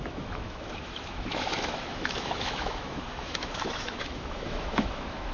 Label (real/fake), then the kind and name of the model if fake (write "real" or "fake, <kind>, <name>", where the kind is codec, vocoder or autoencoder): fake, autoencoder, DAC-VAE